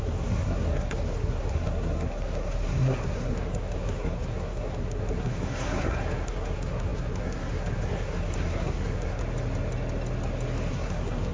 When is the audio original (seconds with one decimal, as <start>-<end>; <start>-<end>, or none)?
9.2-10.7